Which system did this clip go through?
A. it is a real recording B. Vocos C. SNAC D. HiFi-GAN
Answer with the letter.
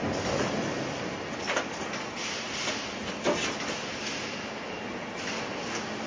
A